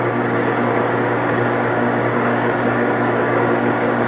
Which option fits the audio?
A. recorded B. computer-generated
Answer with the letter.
B